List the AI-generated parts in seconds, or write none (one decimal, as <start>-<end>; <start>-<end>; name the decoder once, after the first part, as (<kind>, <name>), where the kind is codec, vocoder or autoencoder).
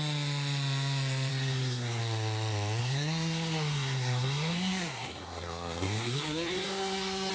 1.3-2.0 (codec, SNAC); 2.8-7.3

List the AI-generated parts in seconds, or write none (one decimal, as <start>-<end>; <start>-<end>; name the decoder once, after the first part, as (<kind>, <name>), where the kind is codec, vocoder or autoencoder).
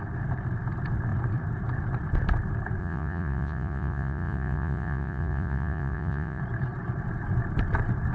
2.8-6.4 (vocoder, Vocos)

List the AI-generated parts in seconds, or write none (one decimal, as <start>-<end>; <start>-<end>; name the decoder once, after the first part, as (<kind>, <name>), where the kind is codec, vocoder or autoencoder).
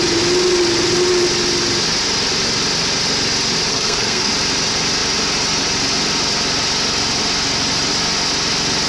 3.7-4.3 (codec, SNAC)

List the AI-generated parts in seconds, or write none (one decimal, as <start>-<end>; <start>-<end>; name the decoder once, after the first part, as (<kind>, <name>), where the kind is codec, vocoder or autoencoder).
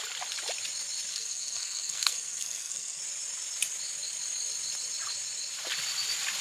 1.1-3.0 (codec, SNAC)